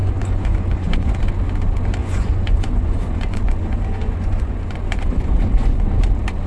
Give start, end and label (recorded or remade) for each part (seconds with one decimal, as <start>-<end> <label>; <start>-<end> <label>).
0.0-1.2 remade; 1.2-2.0 recorded; 2.0-5.9 remade; 5.9-6.5 recorded